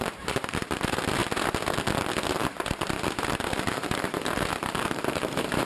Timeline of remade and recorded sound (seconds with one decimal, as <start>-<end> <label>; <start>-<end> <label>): 0.0-1.2 remade; 1.2-2.3 recorded; 2.3-5.7 remade